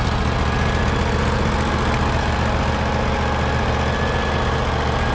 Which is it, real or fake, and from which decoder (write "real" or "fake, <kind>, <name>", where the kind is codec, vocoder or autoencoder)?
real